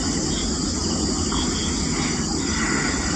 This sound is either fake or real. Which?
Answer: real